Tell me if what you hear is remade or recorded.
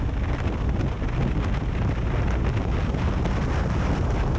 recorded